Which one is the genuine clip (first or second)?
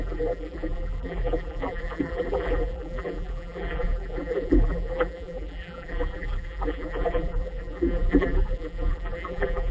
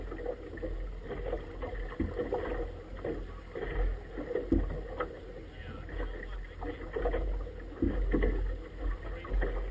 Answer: second